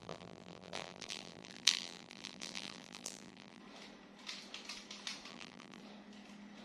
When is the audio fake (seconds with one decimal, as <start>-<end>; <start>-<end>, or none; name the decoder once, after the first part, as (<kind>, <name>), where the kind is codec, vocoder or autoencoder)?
0.0-3.6 (vocoder, BigVGAN v2); 5.3-5.8